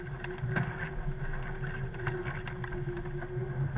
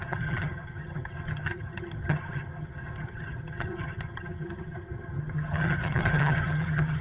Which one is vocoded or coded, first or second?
second